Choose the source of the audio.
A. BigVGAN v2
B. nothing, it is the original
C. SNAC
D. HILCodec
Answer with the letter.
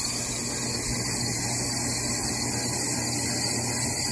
B